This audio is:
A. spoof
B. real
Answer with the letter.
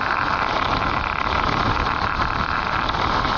B